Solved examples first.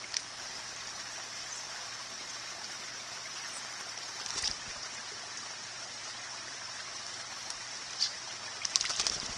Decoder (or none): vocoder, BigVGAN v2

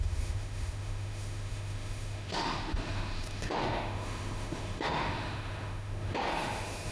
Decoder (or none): autoencoder, DAC-VAE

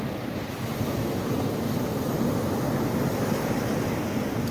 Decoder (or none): none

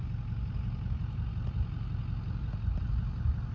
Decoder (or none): none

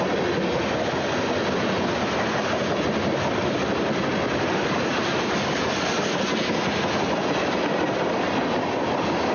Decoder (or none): none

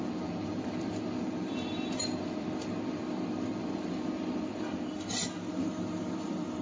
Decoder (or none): vocoder, BigVGAN v2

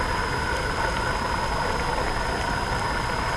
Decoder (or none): none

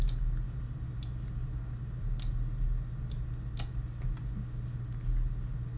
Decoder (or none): none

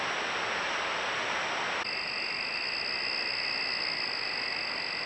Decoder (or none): none